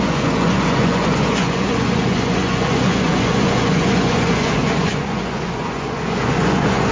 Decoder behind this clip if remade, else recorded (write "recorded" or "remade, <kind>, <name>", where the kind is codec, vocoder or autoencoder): remade, vocoder, Vocos